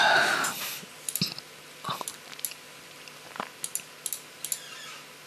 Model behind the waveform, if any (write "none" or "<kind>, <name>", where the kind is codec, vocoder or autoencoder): none